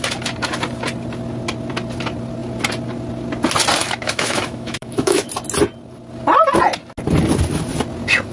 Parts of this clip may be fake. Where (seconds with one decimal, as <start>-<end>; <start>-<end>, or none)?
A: 3.8-5.3